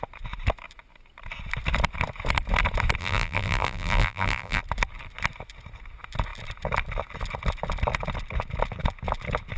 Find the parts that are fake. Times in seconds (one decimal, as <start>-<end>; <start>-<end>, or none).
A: 3.0-4.6